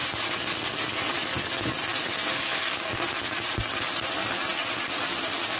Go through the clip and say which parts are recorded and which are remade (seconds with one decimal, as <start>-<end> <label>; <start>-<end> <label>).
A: 0.0-5.6 recorded